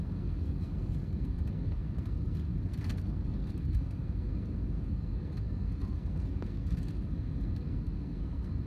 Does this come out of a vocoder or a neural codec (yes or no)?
yes